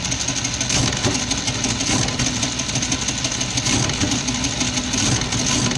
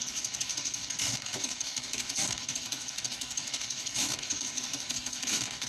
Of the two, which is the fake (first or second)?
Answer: second